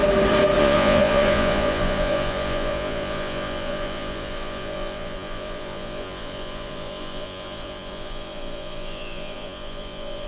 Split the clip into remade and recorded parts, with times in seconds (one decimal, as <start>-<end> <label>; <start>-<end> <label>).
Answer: 0.0-0.6 recorded; 0.6-10.3 remade